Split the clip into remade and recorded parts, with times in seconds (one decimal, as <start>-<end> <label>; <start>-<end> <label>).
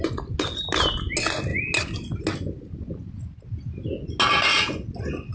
0.0-5.3 recorded